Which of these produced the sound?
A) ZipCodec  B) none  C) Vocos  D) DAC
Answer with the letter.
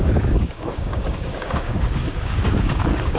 D